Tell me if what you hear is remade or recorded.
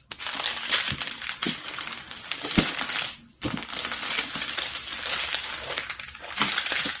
recorded